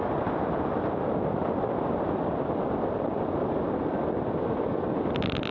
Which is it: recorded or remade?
recorded